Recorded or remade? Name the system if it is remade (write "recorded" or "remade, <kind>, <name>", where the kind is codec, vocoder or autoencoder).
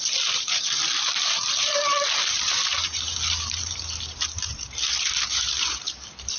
remade, vocoder, BigVGAN v2